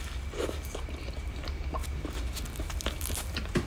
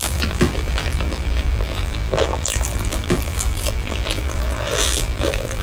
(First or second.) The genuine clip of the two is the first